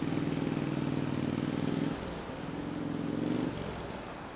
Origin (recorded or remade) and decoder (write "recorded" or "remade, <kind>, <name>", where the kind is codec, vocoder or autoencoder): recorded